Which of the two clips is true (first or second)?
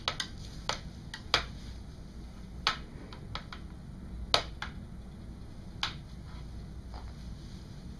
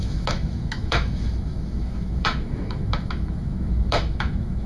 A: first